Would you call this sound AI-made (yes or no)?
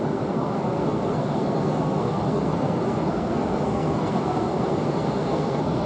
yes